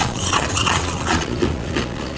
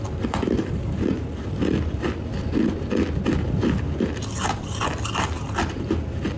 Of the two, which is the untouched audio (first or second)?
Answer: second